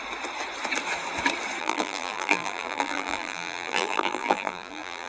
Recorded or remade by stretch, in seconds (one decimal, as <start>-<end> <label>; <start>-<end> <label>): 0.0-1.6 recorded; 1.6-5.1 remade